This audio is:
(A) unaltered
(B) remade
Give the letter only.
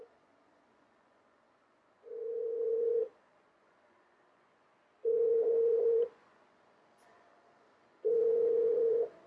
B